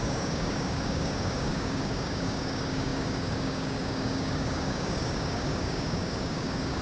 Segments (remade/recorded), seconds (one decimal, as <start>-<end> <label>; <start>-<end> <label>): 0.0-6.8 remade